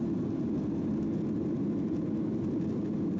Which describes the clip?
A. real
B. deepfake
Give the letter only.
A